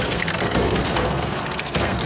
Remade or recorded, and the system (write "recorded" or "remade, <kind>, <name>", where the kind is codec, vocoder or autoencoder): remade, codec, SNAC